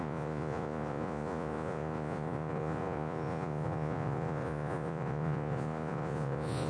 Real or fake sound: fake